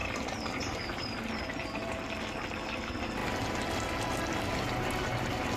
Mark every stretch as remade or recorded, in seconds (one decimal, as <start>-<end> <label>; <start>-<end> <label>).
0.0-2.0 remade; 2.0-5.6 recorded